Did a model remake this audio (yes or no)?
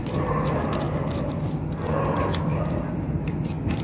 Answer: no